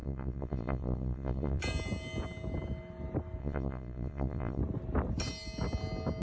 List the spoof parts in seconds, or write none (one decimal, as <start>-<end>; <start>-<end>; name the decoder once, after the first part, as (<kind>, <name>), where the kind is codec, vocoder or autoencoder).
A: 0.0-1.6 (vocoder, Vocos); 3.4-4.6